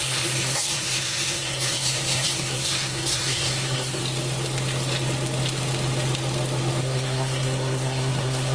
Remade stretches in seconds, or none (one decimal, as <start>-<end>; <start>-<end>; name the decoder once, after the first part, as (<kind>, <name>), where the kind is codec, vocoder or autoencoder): 0.0-4.0 (codec, SNAC); 6.8-8.5